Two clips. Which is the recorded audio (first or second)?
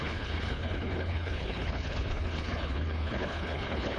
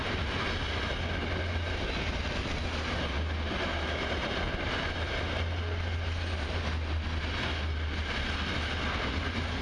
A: second